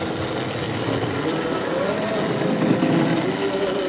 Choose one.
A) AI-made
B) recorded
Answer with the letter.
B